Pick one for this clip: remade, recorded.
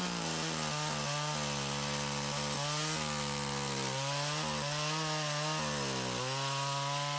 recorded